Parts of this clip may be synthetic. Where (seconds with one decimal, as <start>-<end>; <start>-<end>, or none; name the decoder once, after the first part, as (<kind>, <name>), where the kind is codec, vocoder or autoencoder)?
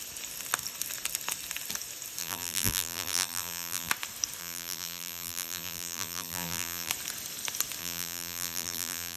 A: 2.2-3.9 (vocoder, BigVGAN v2); 4.4-6.9; 7.8-9.2